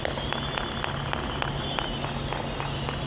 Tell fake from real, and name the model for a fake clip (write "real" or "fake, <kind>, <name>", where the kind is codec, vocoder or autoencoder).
real